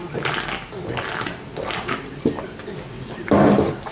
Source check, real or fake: real